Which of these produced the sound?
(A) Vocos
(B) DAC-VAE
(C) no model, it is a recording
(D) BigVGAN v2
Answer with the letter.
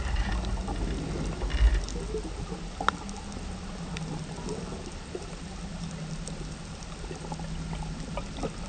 C